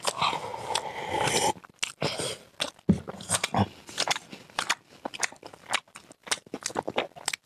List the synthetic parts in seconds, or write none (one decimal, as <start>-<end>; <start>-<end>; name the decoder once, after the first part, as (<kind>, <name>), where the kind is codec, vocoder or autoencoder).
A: none